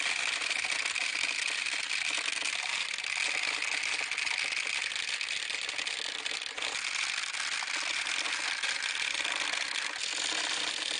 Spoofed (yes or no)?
no